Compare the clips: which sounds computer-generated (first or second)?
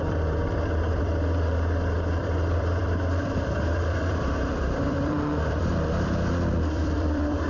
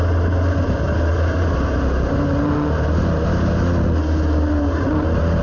first